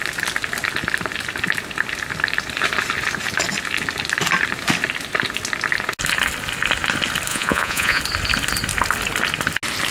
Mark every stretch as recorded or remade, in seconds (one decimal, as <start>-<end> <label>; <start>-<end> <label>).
0.0-7.3 recorded; 7.3-8.0 remade; 8.0-9.9 recorded